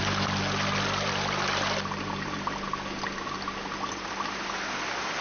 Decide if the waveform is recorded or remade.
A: recorded